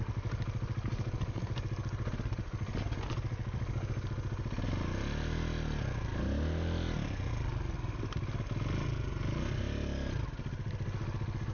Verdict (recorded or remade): recorded